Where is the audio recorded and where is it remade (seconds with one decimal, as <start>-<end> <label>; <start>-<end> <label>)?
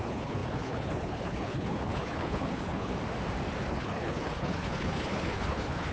0.0-2.9 remade; 2.9-3.7 recorded; 3.7-5.9 remade